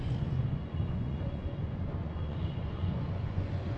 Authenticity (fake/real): fake